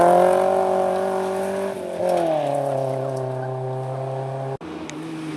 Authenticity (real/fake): real